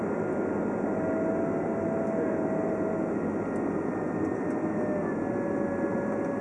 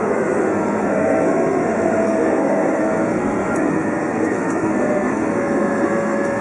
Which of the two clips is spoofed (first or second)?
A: second